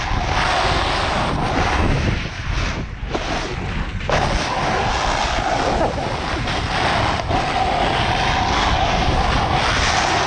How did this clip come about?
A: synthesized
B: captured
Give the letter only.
B